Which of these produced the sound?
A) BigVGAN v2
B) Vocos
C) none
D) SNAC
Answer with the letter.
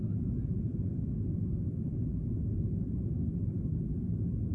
C